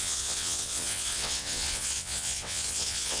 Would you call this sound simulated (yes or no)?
yes